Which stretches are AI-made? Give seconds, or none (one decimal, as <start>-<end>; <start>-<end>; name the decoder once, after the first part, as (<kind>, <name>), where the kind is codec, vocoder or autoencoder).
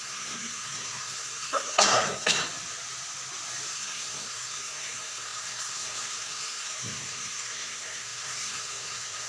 0.0-2.4 (codec, SNAC); 3.7-9.3